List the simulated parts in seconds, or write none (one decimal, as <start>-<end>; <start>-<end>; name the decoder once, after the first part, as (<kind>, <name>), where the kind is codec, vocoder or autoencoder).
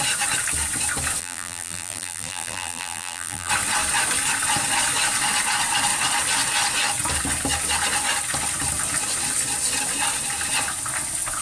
1.2-3.5 (vocoder, BigVGAN v2)